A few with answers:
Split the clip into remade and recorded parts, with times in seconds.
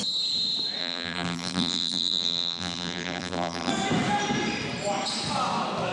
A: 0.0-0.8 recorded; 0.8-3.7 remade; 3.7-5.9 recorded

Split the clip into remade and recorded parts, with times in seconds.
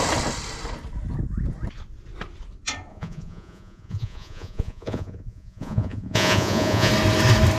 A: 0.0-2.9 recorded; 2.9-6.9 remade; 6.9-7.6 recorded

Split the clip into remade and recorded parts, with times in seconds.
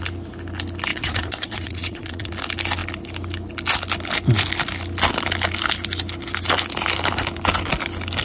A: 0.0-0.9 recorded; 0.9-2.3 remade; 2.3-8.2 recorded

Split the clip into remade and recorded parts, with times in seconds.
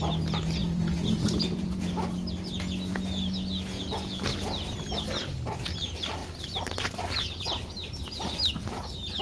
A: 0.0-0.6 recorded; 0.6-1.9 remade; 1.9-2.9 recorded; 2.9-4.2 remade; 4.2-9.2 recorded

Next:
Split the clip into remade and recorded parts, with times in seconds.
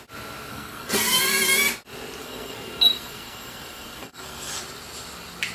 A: 0.0-0.5 recorded; 0.5-1.2 remade; 1.2-2.2 recorded; 2.2-4.6 remade; 4.6-5.5 recorded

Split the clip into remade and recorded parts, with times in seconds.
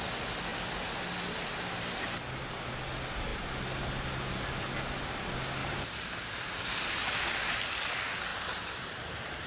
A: 0.0-5.6 recorded; 5.6-7.3 remade; 7.3-8.3 recorded; 8.3-9.5 remade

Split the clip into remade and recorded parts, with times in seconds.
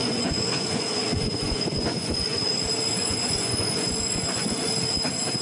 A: 0.0-2.4 remade; 2.4-3.0 recorded; 3.0-4.7 remade; 4.7-5.4 recorded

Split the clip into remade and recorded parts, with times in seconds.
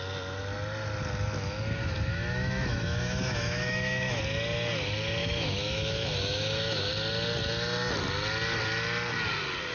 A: 0.0-1.8 recorded; 1.8-4.2 remade; 4.2-5.2 recorded; 5.2-6.9 remade; 6.9-9.7 recorded